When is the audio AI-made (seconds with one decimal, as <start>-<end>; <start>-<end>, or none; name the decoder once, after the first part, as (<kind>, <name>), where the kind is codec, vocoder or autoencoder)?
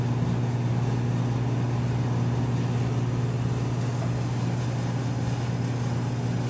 none